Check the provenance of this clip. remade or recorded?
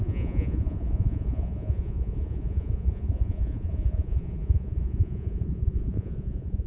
remade